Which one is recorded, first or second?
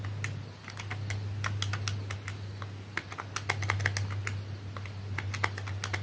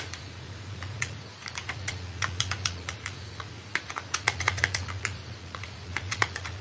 first